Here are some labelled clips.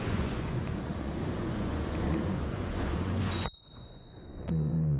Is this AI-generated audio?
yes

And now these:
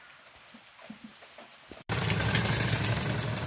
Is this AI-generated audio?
no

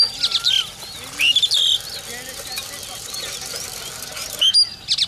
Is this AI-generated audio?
no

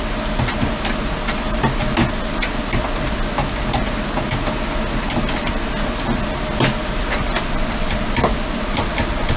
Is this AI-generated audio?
no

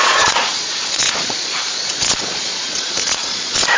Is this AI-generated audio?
yes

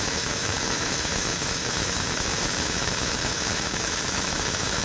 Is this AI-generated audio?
yes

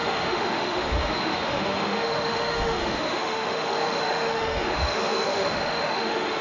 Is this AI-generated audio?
yes